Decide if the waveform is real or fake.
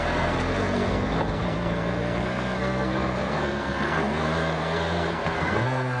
fake